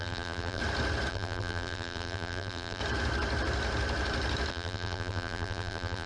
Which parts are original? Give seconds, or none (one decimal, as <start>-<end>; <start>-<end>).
0.6-1.1; 2.8-4.5